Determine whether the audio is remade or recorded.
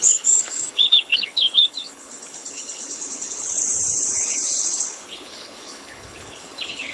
remade